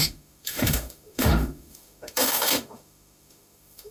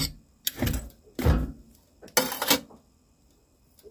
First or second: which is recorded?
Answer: second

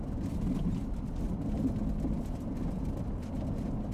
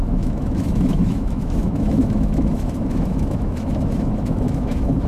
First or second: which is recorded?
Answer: first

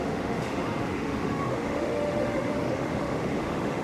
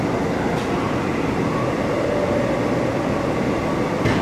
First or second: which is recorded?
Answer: second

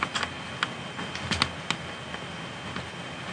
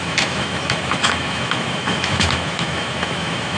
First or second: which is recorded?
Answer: first